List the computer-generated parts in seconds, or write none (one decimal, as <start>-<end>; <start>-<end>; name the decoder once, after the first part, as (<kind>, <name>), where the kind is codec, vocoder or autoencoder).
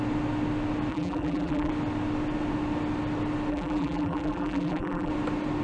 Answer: 0.9-1.7 (vocoder, BigVGAN v2); 3.5-5.1